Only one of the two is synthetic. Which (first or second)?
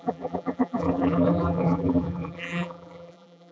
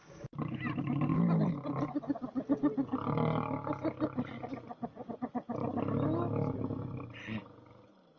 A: first